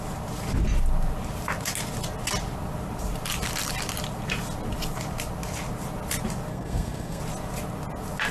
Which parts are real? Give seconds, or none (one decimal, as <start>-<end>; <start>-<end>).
0.0-6.5; 7.2-8.3